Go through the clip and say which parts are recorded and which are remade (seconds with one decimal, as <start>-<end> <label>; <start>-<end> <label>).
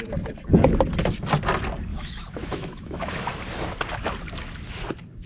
0.0-1.9 recorded; 1.9-3.3 remade; 3.3-5.3 recorded